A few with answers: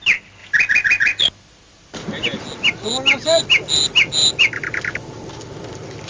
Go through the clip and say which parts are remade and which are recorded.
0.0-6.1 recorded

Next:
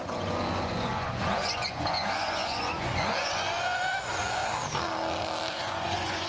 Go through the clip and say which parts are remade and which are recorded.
0.0-4.4 remade; 4.4-5.5 recorded; 5.5-6.3 remade

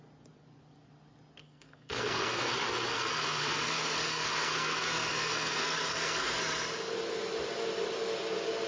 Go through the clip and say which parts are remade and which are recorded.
0.0-1.4 recorded; 1.4-2.5 remade; 2.5-2.9 recorded; 2.9-6.4 remade; 6.4-8.7 recorded

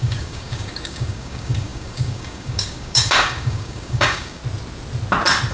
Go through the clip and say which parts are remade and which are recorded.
0.0-4.4 remade; 4.4-5.5 recorded

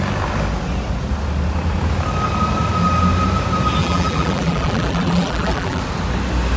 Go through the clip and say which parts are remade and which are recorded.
0.0-3.8 recorded; 3.8-5.8 remade; 5.8-6.6 recorded

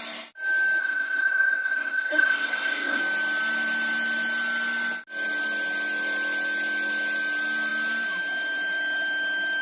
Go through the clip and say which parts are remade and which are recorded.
0.0-0.8 recorded; 0.8-3.0 remade; 3.0-9.6 recorded

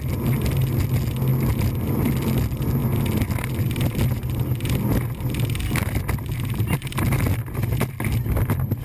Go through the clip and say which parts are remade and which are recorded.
0.0-8.8 recorded